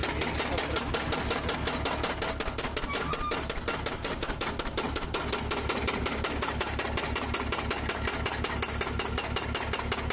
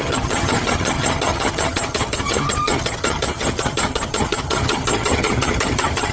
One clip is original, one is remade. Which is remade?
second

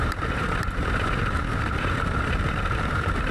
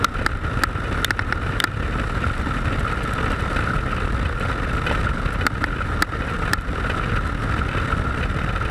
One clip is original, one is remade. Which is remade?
first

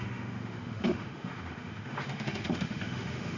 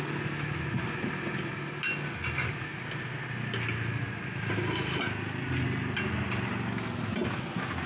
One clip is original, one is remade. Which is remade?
first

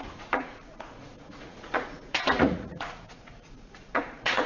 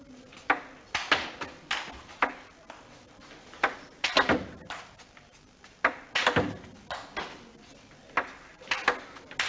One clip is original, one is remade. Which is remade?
first